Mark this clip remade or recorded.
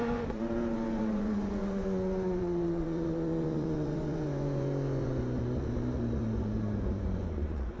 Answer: remade